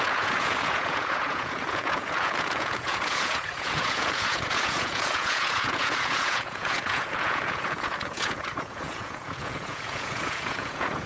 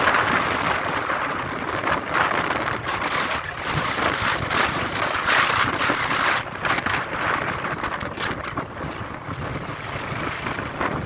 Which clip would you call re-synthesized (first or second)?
first